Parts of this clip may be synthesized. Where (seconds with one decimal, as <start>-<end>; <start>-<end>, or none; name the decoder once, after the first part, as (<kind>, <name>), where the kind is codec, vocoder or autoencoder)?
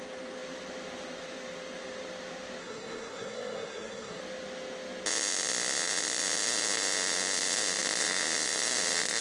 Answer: 2.6-4.2 (codec, SNAC)